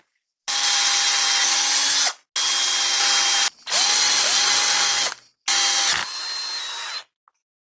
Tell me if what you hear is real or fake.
real